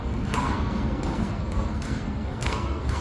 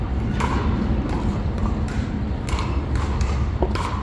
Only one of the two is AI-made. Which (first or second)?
first